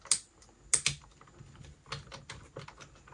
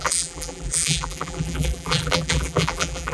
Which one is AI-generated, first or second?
second